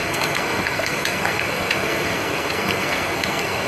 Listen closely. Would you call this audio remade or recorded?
remade